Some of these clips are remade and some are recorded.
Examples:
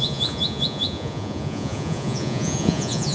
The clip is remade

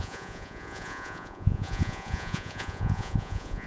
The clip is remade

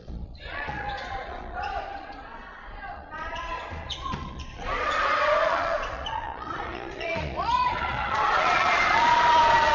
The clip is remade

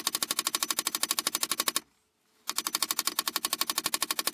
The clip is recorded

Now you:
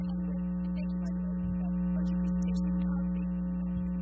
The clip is recorded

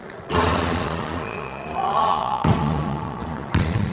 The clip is remade